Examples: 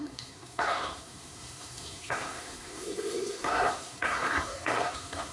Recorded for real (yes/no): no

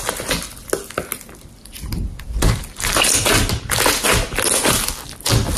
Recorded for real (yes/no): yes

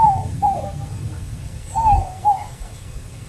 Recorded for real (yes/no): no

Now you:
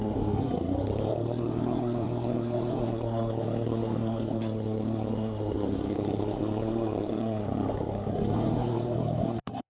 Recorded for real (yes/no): no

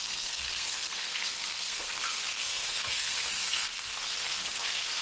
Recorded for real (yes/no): no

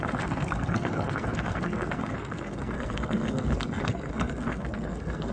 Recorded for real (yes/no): no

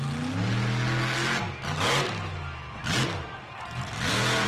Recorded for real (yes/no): yes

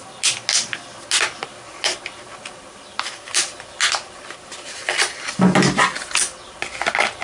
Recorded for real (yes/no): yes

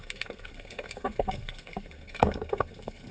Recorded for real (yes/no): no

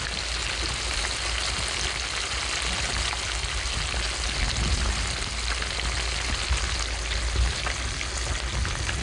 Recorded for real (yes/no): yes